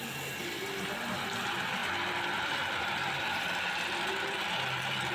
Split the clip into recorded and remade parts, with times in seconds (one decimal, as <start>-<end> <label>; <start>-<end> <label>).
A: 0.0-5.1 remade